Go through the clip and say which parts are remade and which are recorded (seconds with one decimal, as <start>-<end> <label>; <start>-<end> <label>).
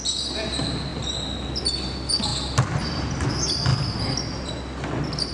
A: 0.0-5.3 recorded